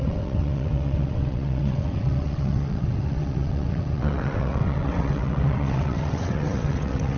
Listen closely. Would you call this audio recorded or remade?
remade